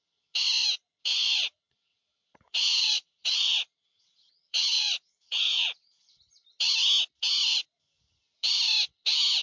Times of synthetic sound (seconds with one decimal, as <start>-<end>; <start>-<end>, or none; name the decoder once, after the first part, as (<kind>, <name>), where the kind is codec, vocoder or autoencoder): 1.1-6.2 (vocoder, WaveNeXt)